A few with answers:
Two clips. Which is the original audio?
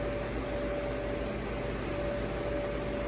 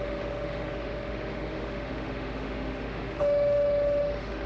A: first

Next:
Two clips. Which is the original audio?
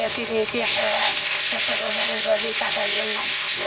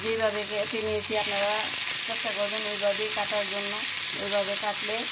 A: second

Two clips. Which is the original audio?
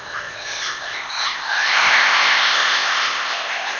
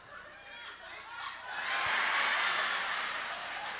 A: second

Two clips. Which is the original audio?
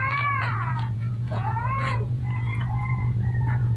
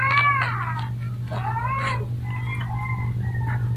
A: second